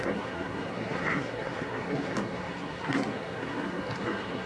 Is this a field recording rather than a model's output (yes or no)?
no